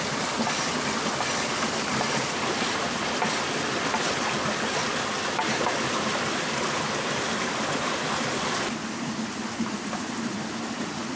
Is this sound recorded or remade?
recorded